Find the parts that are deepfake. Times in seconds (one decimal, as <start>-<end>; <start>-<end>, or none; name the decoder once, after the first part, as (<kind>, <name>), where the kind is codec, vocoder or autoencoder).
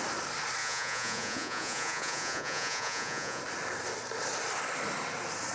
0.6-3.4 (vocoder, Vocos)